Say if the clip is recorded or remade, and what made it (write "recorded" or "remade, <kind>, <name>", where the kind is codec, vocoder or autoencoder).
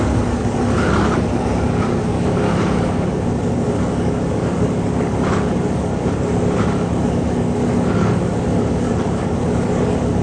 remade, codec, DAC